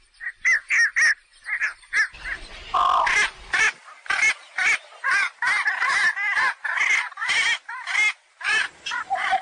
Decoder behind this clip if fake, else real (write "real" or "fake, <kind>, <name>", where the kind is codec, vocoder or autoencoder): real